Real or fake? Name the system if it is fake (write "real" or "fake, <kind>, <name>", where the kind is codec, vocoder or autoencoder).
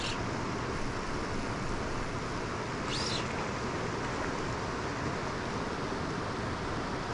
real